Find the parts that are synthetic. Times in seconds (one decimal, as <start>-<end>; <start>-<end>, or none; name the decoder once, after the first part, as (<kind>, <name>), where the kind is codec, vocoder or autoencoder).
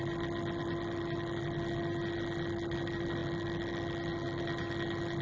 none